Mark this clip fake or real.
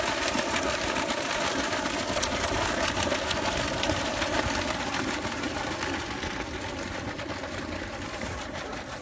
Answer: real